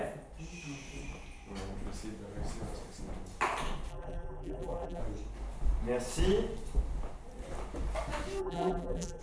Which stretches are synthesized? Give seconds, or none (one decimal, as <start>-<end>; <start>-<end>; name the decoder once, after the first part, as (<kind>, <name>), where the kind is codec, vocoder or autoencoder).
3.9-5.0 (vocoder, BigVGAN v2); 8.4-9.2